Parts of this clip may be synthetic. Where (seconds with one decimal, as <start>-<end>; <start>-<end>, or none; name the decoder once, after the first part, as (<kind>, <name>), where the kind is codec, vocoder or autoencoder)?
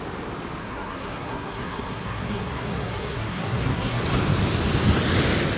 0.6-4.0 (codec, SNAC)